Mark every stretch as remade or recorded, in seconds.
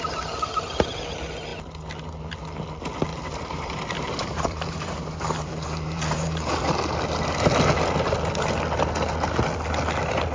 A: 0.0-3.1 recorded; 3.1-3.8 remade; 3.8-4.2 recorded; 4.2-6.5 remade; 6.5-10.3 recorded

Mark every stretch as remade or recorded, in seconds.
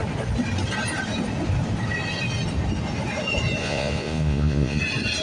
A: 0.0-3.6 recorded; 3.6-4.8 remade; 4.8-5.2 recorded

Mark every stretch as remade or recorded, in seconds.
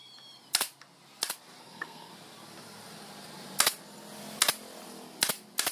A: 0.0-1.6 recorded; 1.6-2.1 remade; 2.1-5.7 recorded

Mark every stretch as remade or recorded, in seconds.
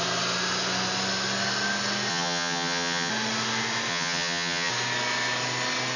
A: 0.0-2.1 recorded; 2.1-3.1 remade; 3.1-3.9 recorded; 3.9-4.7 remade; 4.7-6.0 recorded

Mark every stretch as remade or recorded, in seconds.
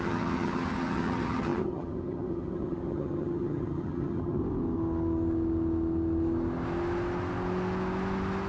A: 0.0-4.4 remade; 4.4-8.5 recorded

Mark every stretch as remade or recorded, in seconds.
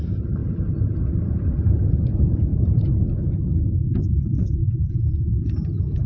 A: 0.0-6.1 remade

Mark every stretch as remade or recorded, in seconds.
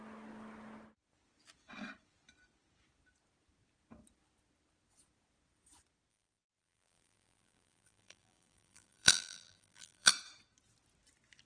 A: 0.0-6.1 recorded; 6.1-10.1 remade; 10.1-11.5 recorded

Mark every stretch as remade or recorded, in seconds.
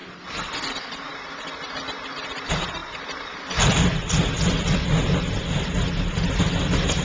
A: 0.0-7.0 remade